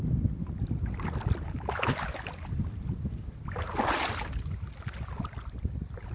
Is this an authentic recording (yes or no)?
yes